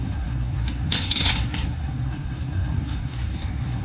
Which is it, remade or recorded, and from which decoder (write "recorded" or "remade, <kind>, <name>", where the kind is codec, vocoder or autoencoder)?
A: remade, codec, SNAC